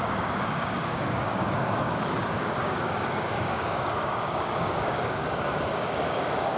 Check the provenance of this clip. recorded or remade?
remade